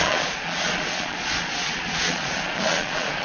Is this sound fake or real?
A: fake